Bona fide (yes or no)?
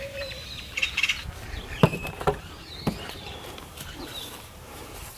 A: no